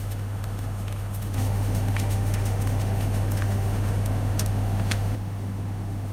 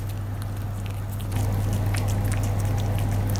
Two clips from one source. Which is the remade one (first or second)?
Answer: first